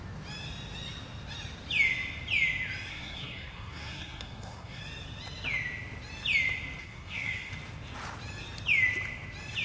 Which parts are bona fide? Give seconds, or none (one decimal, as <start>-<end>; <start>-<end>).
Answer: 0.0-2.9; 4.8-6.8; 7.5-9.6